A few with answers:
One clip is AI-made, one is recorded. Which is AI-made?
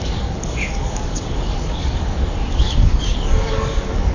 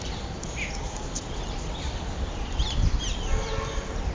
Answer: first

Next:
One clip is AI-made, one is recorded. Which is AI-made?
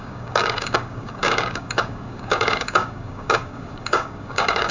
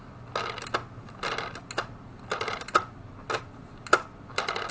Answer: first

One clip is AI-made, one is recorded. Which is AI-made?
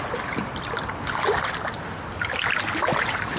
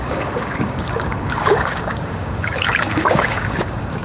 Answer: second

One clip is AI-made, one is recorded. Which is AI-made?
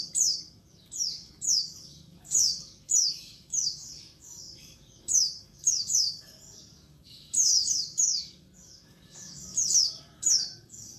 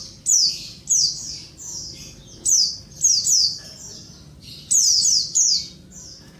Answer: first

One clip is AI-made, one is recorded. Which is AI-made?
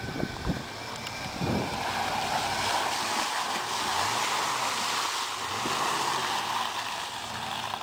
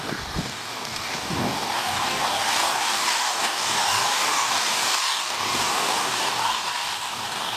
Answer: second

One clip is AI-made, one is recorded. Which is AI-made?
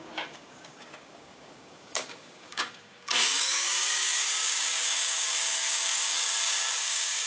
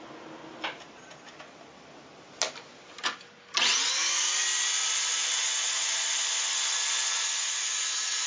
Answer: first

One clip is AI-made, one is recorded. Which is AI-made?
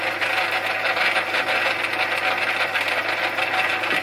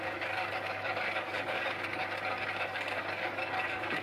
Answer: second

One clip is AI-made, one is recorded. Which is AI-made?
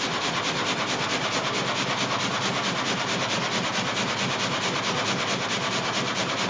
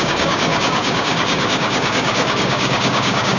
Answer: second